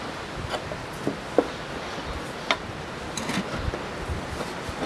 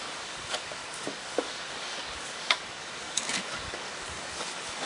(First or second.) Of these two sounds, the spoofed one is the second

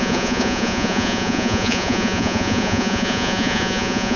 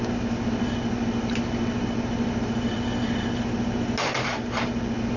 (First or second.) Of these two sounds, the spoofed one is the first